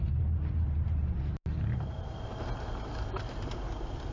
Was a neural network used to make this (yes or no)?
no